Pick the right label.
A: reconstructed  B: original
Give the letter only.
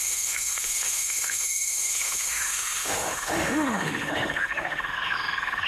A